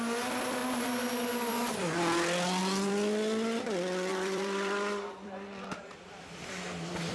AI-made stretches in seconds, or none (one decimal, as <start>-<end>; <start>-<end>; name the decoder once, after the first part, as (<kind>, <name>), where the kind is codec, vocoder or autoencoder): 0.6-1.5 (vocoder, BigVGAN v2); 2.6-3.6; 4.1-6.6